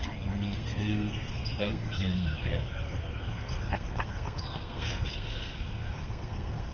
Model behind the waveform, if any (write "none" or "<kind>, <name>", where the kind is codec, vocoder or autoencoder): codec, SNAC